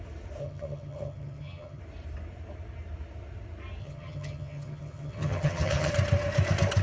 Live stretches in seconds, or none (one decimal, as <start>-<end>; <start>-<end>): 0.0-0.4; 1.8-3.8; 5.9-6.8